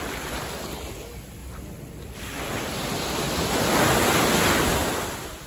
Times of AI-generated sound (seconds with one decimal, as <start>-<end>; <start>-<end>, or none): none